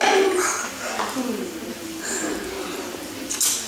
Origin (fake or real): real